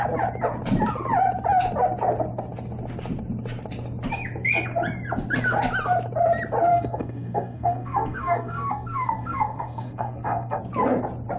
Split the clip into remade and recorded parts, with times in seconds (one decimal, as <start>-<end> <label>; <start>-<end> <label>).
0.0-6.7 recorded; 6.7-10.6 remade; 10.6-11.4 recorded